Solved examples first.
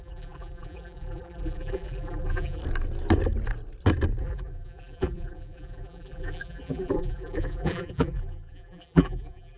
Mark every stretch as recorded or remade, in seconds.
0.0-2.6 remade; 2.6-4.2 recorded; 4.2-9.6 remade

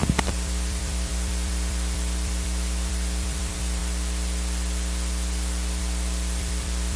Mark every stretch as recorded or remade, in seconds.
0.0-3.8 remade; 3.8-5.8 recorded; 5.8-7.0 remade

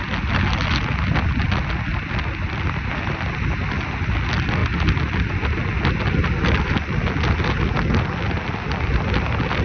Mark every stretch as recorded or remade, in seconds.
0.0-9.6 recorded

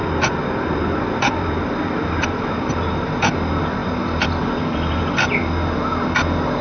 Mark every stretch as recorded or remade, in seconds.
0.0-3.3 remade; 3.3-3.8 recorded; 3.8-5.1 remade; 5.1-6.6 recorded